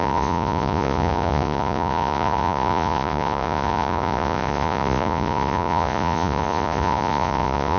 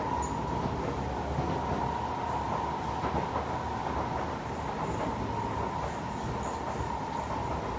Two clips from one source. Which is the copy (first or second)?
first